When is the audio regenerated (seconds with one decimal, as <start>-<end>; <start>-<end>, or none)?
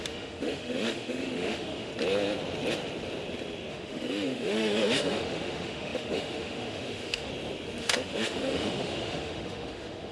0.0-1.9; 3.7-7.3; 7.8-10.1